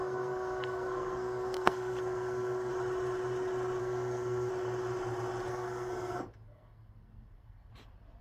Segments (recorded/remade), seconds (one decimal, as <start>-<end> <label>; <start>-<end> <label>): 0.0-2.7 remade; 2.7-3.8 recorded; 3.8-4.5 remade; 4.5-5.5 recorded; 5.5-7.7 remade; 7.7-8.2 recorded